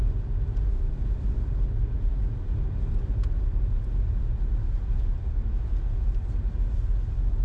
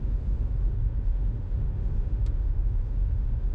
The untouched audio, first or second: first